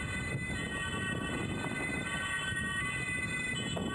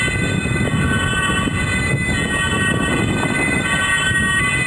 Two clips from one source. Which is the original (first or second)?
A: second